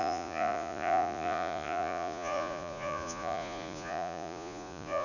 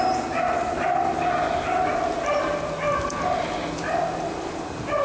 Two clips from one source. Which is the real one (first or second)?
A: second